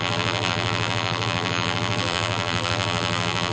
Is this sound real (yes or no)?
no